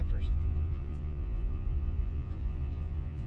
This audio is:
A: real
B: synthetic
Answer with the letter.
B